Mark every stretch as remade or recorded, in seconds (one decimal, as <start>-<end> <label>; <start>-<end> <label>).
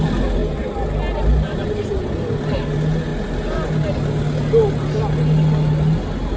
0.0-6.4 recorded